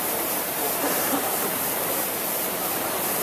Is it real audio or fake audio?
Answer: fake